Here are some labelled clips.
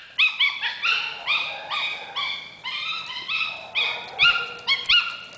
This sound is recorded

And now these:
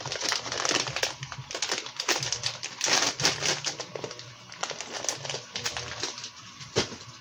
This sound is recorded